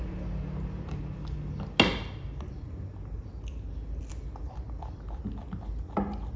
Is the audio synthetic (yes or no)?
no